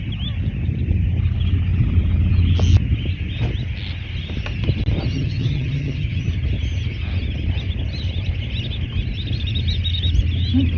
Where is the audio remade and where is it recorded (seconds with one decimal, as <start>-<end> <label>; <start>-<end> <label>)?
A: 0.0-5.1 recorded; 5.1-6.3 remade; 6.3-10.8 recorded